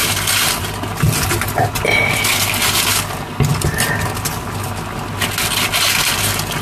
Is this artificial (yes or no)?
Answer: no